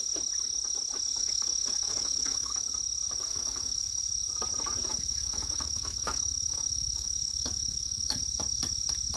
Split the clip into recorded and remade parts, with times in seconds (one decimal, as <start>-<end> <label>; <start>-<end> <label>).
0.0-1.2 recorded; 1.2-2.7 remade; 2.7-3.3 recorded; 3.3-4.0 remade; 4.0-4.9 recorded; 4.9-8.2 remade; 8.2-9.2 recorded